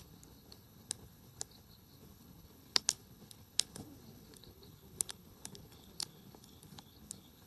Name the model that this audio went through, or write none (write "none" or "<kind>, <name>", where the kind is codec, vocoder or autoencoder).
codec, HILCodec